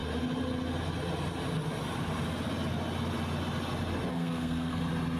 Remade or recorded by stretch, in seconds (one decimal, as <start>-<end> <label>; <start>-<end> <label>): 0.0-4.1 recorded; 4.1-4.8 remade; 4.8-5.2 recorded